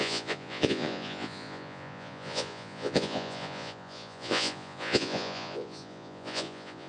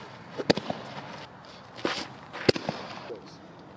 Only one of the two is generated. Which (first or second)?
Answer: first